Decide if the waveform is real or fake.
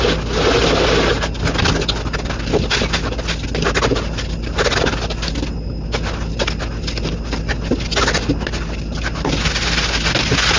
real